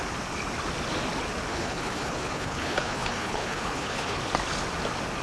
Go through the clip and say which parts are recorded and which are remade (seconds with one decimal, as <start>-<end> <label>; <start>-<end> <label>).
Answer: 0.0-1.5 recorded; 1.5-4.2 remade; 4.2-5.2 recorded